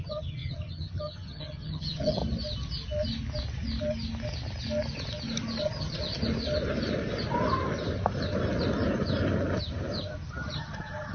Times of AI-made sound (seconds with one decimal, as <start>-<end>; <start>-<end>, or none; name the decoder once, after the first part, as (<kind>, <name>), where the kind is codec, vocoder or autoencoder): 0.0-2.2 (vocoder, HiFi-GAN); 5.6-6.0; 10.5-11.1